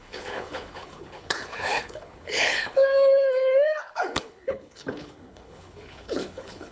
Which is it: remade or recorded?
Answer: remade